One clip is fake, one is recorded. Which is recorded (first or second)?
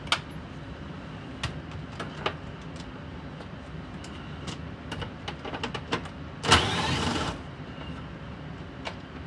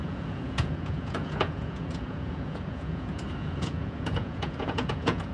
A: first